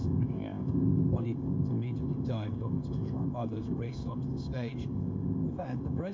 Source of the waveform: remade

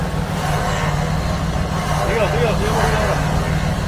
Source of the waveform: recorded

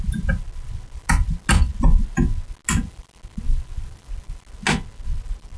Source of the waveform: recorded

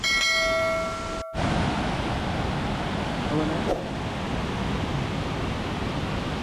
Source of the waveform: recorded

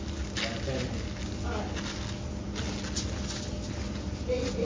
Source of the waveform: recorded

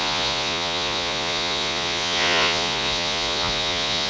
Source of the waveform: remade